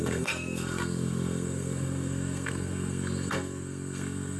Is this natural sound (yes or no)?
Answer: no